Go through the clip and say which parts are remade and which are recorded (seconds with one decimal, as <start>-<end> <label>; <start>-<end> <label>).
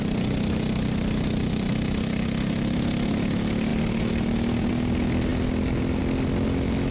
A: 0.0-6.9 recorded